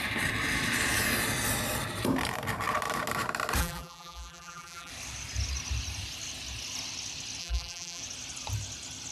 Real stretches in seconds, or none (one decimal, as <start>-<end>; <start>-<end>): 0.0-3.6; 4.9-7.4; 8.0-9.1